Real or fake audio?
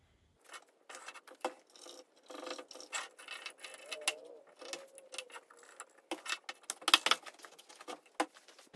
real